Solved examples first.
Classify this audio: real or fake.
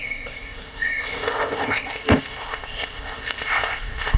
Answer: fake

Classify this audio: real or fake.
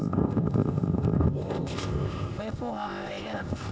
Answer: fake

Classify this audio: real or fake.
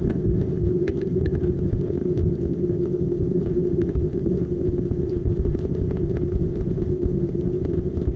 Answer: fake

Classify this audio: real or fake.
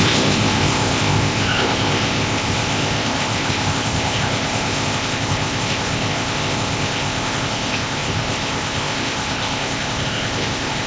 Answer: fake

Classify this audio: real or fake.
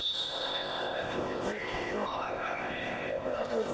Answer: fake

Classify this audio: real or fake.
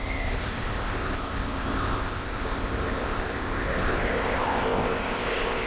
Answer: fake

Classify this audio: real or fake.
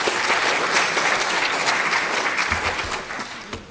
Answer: real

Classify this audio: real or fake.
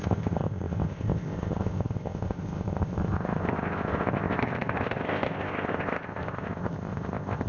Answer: fake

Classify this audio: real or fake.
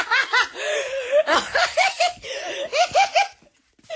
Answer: real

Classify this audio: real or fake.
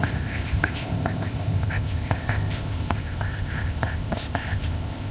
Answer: fake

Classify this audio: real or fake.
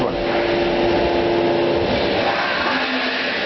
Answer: real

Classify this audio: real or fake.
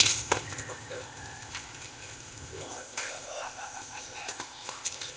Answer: fake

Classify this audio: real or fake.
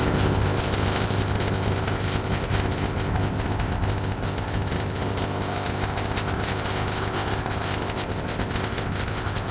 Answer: fake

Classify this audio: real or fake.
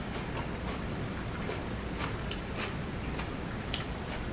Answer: real